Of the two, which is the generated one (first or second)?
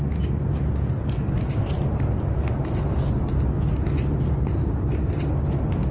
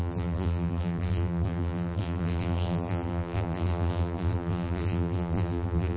second